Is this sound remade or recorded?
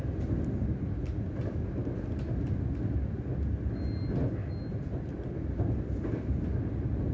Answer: recorded